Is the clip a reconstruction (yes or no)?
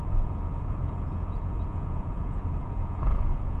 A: yes